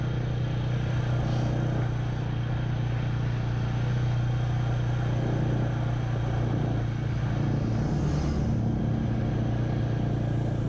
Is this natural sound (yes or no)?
yes